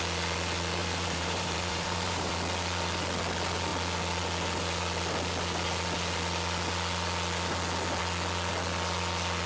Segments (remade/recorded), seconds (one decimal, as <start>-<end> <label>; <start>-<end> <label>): 0.0-0.8 recorded; 0.8-2.3 remade; 2.3-9.5 recorded